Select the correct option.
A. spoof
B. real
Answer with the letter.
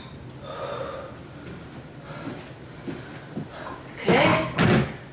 B